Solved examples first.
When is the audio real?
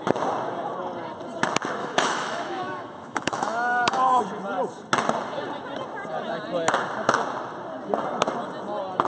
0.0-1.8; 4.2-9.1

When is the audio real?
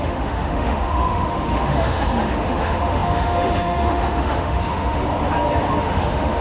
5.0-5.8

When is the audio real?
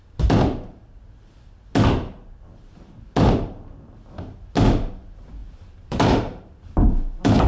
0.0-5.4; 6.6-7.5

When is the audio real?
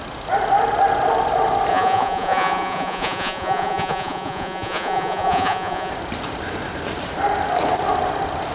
0.0-1.7; 5.9-8.5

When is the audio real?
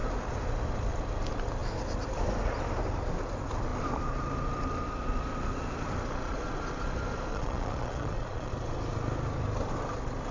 0.0-7.3; 8.5-10.3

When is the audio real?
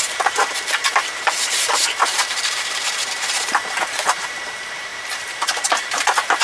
none